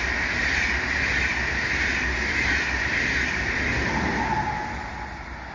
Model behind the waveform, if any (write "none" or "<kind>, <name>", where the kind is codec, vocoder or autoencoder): none